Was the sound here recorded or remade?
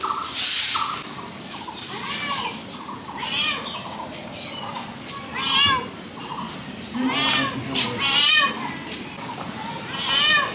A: recorded